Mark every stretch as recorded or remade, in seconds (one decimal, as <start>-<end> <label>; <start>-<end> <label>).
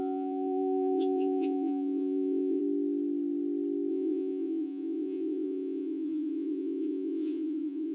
0.0-2.6 remade; 2.6-3.9 recorded; 3.9-7.9 remade